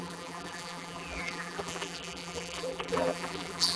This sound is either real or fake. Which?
fake